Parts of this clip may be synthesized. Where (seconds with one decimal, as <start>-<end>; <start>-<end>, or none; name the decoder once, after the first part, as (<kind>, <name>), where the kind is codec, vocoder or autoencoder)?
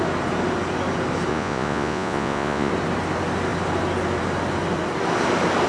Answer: 1.3-2.7 (vocoder, Vocos)